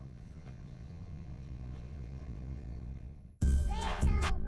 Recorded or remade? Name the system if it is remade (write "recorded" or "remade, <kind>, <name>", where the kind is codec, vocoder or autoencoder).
remade, vocoder, Vocos